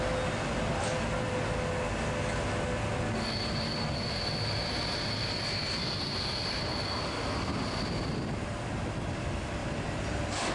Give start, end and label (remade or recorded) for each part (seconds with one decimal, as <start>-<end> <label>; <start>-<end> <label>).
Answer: 0.0-9.6 recorded; 9.6-10.5 remade